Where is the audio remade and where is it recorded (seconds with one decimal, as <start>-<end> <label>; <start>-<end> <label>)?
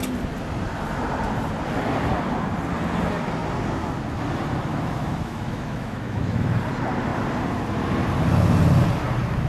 0.0-4.7 recorded; 4.7-6.6 remade; 6.6-9.5 recorded